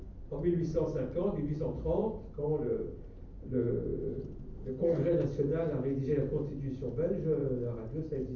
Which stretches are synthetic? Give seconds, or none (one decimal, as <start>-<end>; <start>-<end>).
2.0-3.3